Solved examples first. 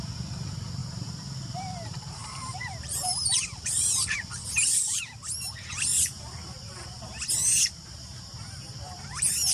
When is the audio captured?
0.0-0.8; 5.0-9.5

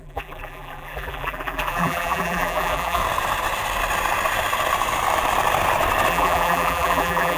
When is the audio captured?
3.0-6.1